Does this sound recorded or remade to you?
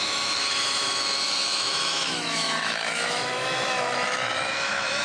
remade